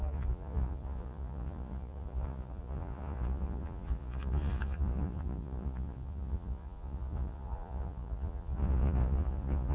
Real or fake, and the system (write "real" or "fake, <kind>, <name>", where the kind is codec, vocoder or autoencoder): fake, vocoder, Vocos